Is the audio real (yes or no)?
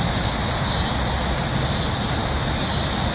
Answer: yes